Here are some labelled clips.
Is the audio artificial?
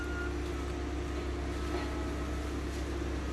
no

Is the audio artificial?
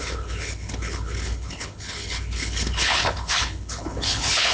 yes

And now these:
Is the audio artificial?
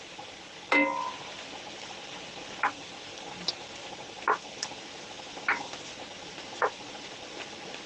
no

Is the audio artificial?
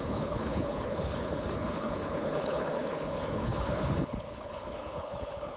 yes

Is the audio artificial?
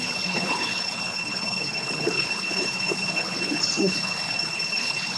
yes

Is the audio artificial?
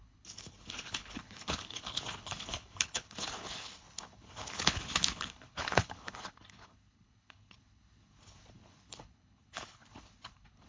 yes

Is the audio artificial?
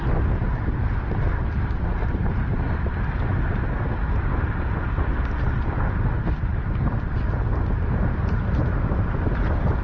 no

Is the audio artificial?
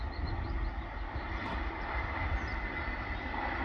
no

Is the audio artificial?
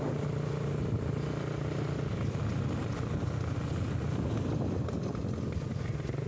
no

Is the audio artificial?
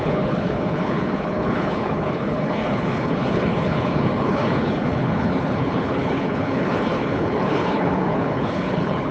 yes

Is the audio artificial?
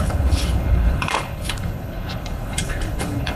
yes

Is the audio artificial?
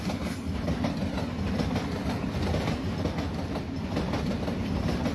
no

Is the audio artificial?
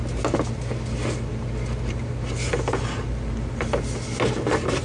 no